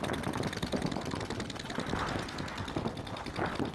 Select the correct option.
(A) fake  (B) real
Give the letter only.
B